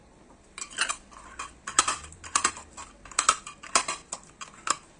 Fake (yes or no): yes